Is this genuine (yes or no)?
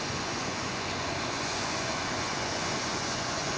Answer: no